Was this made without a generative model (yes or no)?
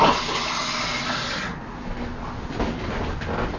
yes